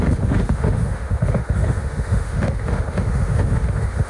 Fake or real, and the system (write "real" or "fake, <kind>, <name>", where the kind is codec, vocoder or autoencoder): fake, autoencoder, DAC-VAE